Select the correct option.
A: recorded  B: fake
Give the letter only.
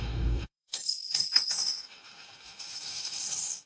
B